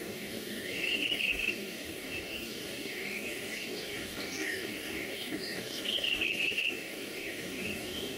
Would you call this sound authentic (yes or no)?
no